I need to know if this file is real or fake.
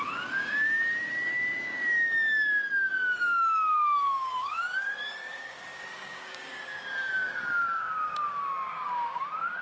fake